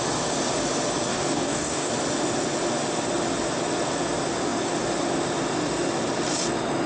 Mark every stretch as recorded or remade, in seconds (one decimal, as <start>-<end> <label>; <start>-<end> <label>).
0.0-1.1 recorded; 1.1-1.9 remade; 1.9-6.9 recorded